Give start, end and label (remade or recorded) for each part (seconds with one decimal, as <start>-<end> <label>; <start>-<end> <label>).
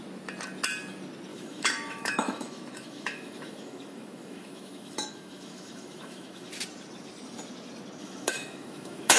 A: 0.0-1.3 recorded; 1.3-6.5 remade; 6.5-8.0 recorded; 8.0-9.2 remade